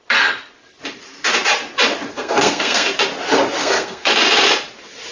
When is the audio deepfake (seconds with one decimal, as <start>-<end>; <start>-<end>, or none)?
2.1-2.9; 3.6-4.1